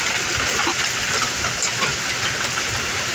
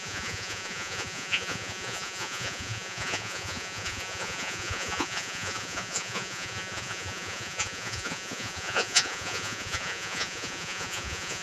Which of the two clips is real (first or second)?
first